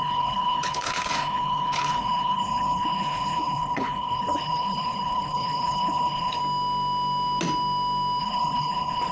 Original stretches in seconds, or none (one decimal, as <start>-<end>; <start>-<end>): 6.4-8.2

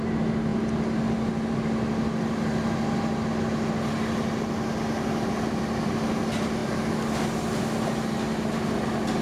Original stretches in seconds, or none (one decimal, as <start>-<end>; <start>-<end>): 0.0-9.2

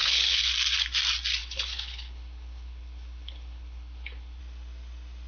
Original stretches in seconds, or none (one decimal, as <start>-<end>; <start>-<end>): 0.5-1.4; 4.4-5.3